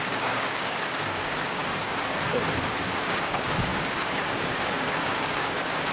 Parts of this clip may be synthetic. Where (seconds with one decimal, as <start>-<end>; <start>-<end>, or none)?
0.0-1.6; 3.0-5.9